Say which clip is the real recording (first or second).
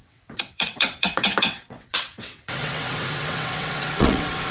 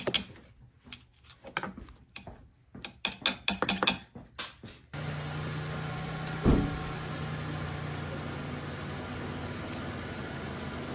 second